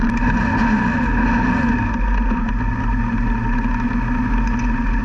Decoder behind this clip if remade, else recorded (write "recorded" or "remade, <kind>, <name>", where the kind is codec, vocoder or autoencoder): recorded